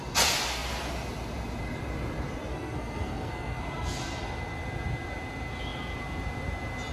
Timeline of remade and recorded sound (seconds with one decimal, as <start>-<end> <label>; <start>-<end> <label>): 0.0-2.5 recorded; 2.5-3.6 remade; 3.6-6.9 recorded